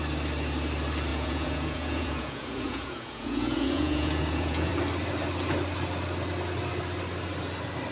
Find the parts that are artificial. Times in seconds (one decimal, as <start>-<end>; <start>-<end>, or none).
1.1-4.7